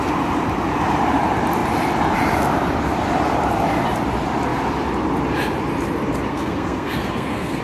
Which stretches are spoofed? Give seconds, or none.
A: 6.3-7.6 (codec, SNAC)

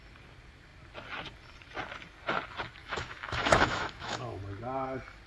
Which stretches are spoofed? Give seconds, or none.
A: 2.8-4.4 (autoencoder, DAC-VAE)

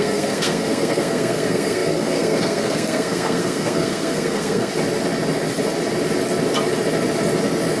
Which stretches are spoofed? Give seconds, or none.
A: 0.0-4.7 (codec, SNAC)